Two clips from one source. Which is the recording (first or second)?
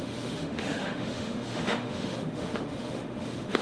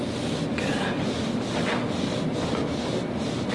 second